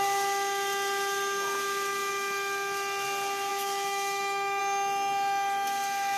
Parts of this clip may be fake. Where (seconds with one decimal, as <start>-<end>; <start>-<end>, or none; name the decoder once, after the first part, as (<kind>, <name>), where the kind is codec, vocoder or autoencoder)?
3.5-4.6 (autoencoder, DAC-VAE)